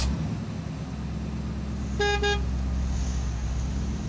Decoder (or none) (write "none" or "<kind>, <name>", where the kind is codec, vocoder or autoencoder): none